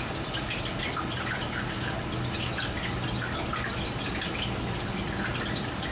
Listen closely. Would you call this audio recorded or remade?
recorded